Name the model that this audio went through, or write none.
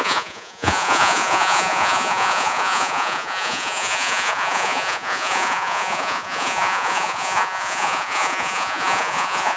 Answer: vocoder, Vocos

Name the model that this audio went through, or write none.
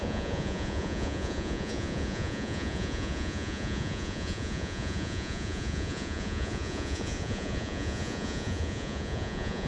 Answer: vocoder, Vocos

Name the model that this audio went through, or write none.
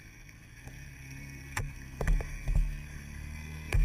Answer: codec, SNAC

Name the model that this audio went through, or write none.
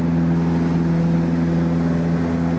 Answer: none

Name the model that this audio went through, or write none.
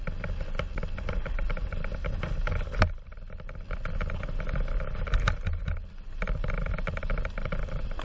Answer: none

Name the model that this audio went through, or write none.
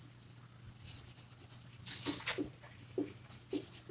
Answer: none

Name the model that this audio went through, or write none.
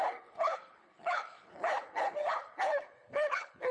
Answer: codec, HILCodec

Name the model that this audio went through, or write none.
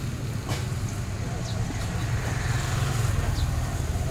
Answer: none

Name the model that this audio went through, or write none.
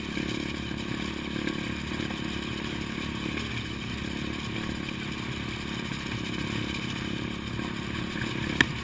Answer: none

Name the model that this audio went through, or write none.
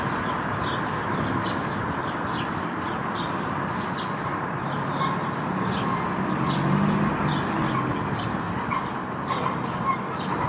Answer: none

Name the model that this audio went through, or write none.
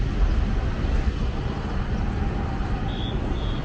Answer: none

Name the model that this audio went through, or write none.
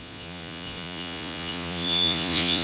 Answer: vocoder, Vocos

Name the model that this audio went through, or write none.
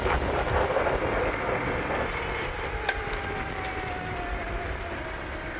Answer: none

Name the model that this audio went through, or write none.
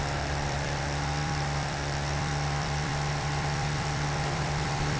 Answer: vocoder, BigVGAN v2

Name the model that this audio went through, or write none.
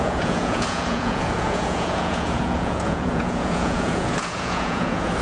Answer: vocoder, Vocos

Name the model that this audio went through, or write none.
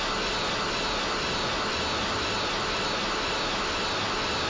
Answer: none